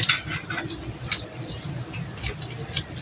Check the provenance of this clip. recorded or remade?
recorded